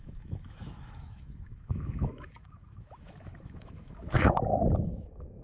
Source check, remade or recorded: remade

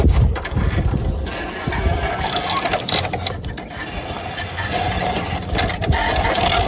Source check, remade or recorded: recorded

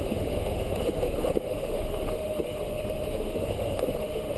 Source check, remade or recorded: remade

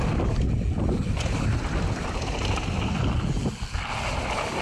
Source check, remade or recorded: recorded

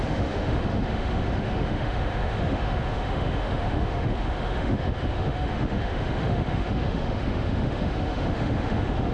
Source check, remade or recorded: remade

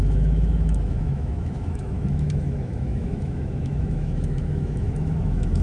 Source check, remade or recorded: remade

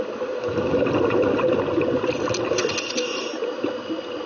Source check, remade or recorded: recorded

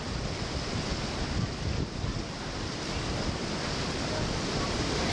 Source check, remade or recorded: recorded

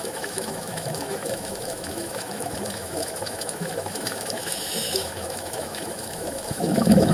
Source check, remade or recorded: remade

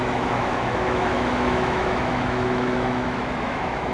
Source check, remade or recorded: remade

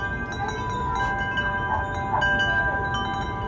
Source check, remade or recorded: recorded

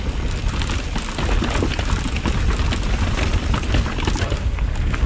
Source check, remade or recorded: recorded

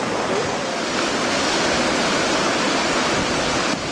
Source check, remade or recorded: recorded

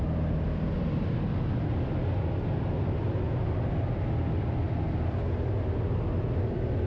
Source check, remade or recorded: recorded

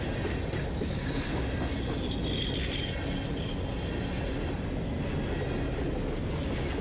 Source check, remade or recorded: recorded